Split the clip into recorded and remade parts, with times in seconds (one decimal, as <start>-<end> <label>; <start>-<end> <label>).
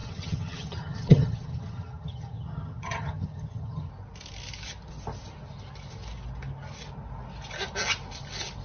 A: 0.0-3.9 remade; 3.9-8.6 recorded